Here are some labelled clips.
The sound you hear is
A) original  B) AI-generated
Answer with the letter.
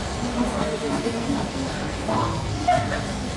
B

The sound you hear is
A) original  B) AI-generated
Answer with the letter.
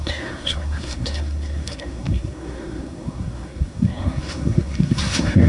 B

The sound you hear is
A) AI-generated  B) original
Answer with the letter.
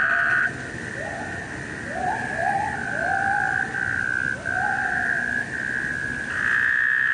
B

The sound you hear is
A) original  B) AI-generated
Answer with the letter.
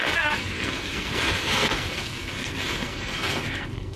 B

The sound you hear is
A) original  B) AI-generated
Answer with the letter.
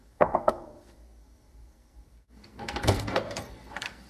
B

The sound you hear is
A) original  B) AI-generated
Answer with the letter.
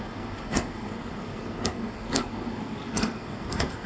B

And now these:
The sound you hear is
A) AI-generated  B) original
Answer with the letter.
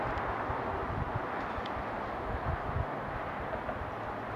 B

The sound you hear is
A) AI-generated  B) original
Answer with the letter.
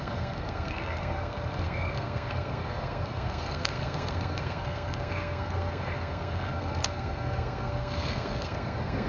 A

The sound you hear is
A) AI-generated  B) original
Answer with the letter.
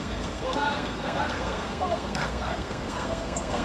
A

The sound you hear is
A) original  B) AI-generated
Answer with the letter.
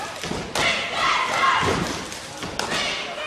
A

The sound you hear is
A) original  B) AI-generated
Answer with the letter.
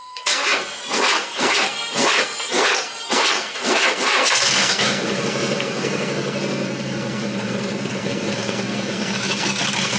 B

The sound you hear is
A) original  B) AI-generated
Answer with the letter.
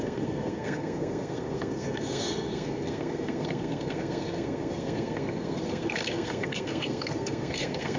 B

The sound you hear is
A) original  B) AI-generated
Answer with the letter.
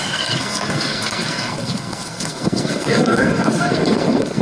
B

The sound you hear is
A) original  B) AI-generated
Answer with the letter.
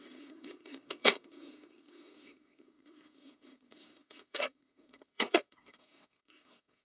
B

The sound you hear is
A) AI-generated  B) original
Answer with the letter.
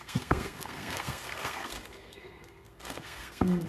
A